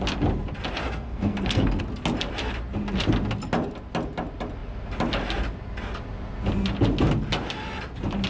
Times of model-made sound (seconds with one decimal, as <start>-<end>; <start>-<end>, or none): 0.8-1.8